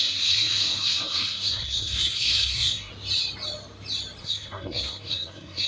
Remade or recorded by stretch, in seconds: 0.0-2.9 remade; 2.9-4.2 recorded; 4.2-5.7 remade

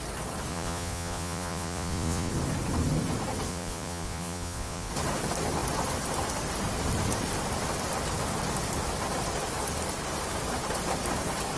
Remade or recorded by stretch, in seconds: 0.0-0.5 recorded; 0.5-2.3 remade; 2.3-3.5 recorded; 3.5-4.9 remade; 4.9-11.6 recorded